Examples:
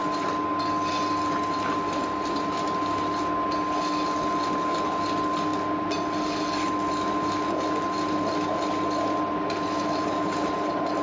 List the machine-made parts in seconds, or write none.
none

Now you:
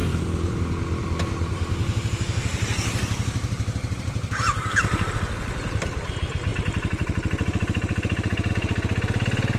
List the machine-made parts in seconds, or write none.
0.0-0.6 (vocoder, BigVGAN v2); 2.5-5.1; 6.5-8.5

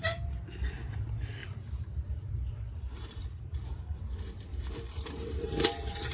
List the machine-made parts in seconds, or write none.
1.4-4.0 (vocoder, BigVGAN v2); 4.5-6.1

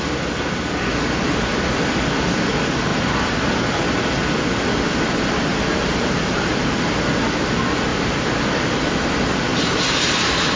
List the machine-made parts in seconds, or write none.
2.9-3.5 (vocoder, BigVGAN v2); 5.5-7.0; 7.9-8.9; 9.5-10.6

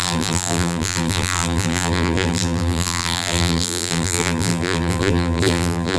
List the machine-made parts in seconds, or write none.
0.0-6.0 (vocoder, BigVGAN v2)